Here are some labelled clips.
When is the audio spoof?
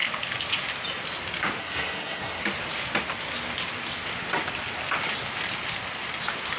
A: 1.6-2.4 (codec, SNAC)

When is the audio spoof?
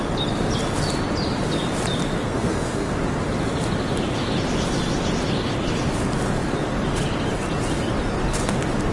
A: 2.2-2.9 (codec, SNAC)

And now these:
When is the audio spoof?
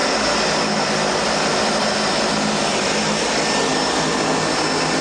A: none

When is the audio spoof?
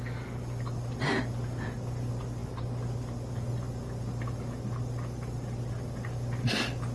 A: none